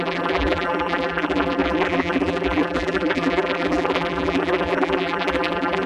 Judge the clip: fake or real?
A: fake